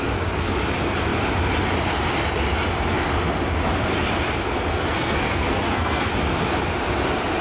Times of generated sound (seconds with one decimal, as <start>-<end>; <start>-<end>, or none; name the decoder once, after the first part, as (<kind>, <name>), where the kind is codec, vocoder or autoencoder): 4.7-6.1 (codec, SNAC)